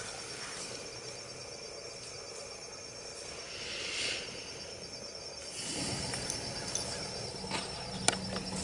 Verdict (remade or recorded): recorded